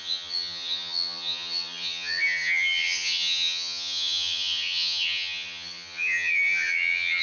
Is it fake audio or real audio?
fake